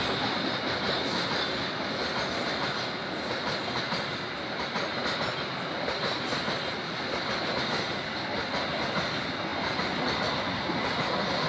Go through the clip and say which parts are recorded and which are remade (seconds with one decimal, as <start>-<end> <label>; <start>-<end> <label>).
0.0-11.5 recorded